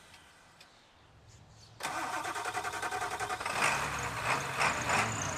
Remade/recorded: recorded